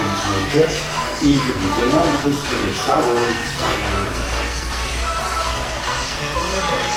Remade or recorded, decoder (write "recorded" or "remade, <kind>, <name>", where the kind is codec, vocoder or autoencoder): remade, codec, SNAC